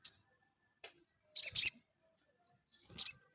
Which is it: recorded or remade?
remade